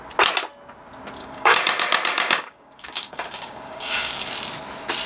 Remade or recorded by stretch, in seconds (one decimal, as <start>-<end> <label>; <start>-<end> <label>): 0.0-1.2 recorded; 1.2-4.3 remade; 4.3-5.1 recorded